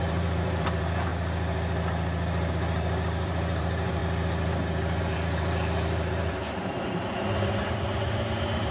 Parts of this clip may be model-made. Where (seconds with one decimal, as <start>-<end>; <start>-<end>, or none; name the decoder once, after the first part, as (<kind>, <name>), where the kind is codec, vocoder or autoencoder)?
0.0-1.1 (vocoder, BigVGAN v2); 2.5-4.0; 5.0-8.7